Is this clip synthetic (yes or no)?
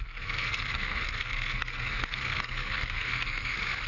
yes